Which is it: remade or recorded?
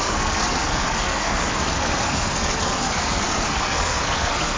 remade